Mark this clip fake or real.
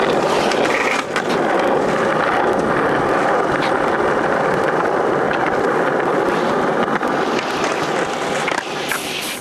fake